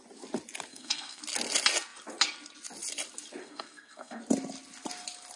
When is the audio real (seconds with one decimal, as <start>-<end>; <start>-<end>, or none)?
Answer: 0.0-0.7; 1.2-3.4; 4.2-5.4